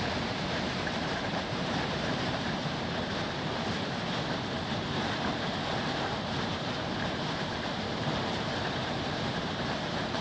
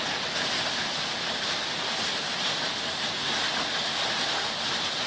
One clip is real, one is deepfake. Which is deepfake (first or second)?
first